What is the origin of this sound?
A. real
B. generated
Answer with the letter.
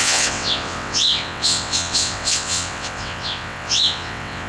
B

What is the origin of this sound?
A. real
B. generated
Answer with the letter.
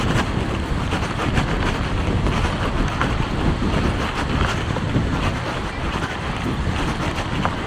A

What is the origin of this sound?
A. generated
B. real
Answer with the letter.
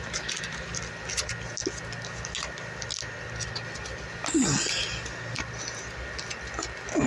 B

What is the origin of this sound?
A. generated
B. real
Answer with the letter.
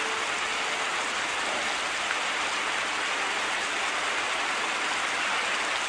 B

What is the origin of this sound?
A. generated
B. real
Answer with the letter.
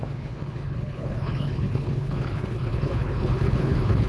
A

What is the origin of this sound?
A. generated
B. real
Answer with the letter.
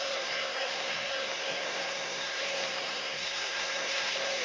A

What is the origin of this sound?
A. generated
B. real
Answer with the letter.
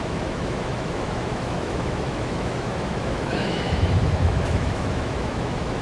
A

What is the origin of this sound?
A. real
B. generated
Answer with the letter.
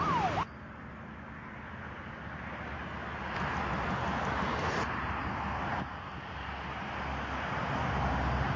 A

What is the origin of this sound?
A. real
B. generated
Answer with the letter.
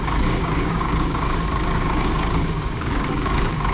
B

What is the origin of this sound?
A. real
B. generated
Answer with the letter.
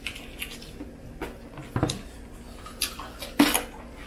A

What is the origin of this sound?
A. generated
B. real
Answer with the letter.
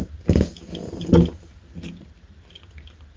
B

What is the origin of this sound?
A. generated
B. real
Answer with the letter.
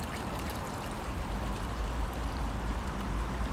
A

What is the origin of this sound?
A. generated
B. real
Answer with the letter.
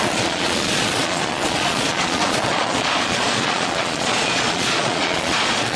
A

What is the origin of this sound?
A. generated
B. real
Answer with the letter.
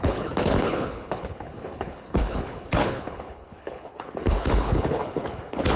A